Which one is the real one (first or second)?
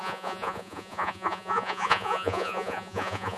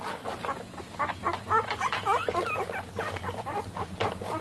second